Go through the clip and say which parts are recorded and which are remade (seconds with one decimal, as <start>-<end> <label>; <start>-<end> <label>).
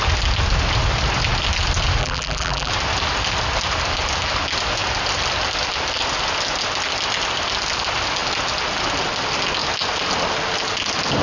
0.0-2.0 recorded; 2.0-2.7 remade; 2.7-11.2 recorded